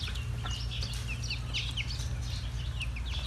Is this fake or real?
real